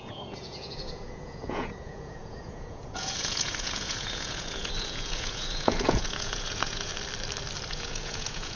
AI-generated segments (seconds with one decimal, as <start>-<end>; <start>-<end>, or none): 0.0-6.9; 7.7-8.6